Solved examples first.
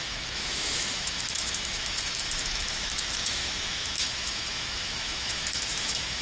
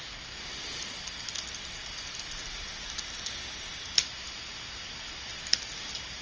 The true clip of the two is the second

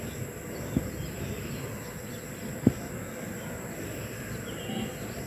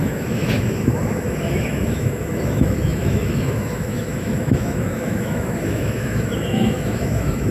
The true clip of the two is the first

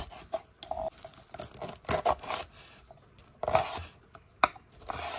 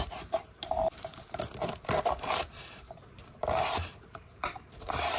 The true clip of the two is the first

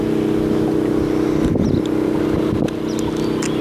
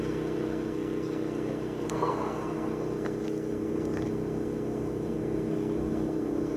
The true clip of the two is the first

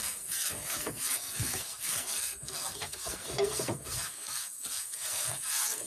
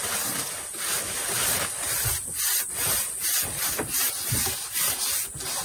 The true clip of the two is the second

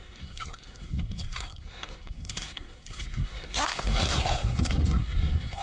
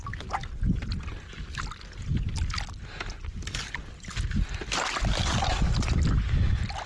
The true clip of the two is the second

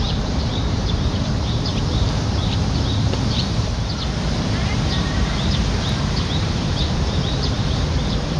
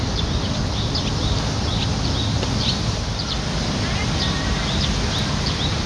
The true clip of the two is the second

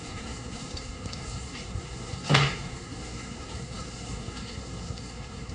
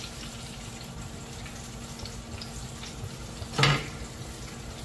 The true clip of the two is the second